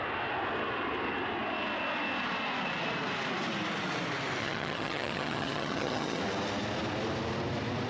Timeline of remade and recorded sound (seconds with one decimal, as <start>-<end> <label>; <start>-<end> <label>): 0.0-4.4 recorded; 4.4-6.2 remade; 6.2-7.9 recorded